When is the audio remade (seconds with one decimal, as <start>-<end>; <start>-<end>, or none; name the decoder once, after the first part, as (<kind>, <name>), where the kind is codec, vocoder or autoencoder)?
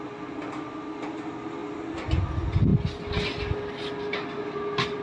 none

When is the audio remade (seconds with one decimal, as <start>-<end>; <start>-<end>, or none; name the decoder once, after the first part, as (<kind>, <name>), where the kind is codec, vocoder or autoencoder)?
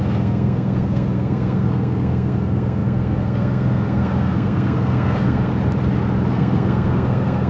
0.0-5.5 (codec, SNAC); 6.3-7.5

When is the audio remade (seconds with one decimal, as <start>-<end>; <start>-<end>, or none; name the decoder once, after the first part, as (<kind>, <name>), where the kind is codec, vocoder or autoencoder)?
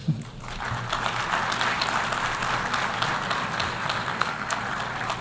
4.1-4.6 (codec, SNAC)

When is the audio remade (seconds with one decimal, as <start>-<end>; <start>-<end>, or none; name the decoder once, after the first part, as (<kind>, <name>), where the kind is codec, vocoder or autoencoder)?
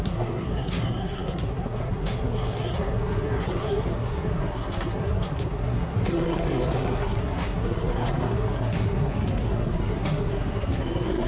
0.0-11.3 (codec, SNAC)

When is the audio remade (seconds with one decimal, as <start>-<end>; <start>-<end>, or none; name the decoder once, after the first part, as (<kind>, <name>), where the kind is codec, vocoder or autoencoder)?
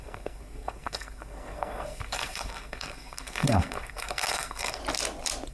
0.0-4.8 (codec, SNAC)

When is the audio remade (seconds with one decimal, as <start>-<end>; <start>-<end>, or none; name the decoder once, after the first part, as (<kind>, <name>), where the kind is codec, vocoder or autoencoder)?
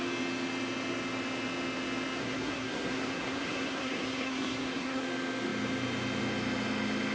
2.2-5.0 (codec, SNAC)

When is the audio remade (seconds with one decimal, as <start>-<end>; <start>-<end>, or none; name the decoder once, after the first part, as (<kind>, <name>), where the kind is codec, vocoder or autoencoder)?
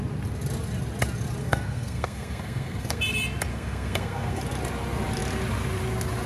1.4-3.0 (codec, SNAC); 3.5-4.4